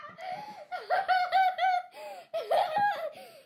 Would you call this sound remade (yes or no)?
no